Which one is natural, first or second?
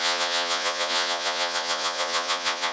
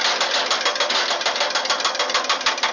second